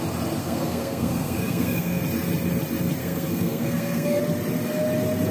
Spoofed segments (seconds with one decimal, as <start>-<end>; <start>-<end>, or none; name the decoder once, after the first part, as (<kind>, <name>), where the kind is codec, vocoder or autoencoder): 0.4-2.0 (codec, SNAC); 3.0-4.2

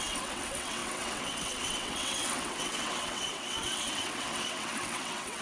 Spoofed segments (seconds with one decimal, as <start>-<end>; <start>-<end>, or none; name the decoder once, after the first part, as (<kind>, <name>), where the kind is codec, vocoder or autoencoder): 0.0-5.4 (vocoder, WaveNeXt)

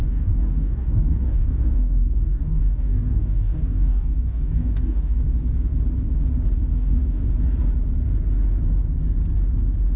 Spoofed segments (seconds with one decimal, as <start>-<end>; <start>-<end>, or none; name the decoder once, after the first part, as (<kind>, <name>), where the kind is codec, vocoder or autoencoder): 0.0-5.2 (codec, DAC); 6.7-7.3

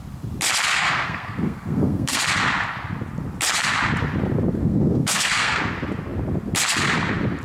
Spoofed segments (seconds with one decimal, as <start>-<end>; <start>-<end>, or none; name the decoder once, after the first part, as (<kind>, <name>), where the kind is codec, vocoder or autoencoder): 0.7-2.2 (codec, SNAC); 4.6-5.6

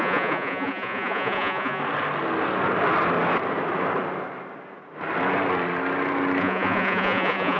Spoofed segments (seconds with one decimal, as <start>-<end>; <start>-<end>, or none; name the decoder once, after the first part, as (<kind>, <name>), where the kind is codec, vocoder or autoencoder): 0.0-1.8 (vocoder, Vocos); 6.4-7.6